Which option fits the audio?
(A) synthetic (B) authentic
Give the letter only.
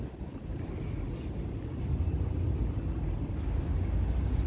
B